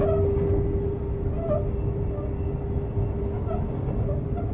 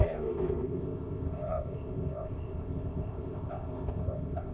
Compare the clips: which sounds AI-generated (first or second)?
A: second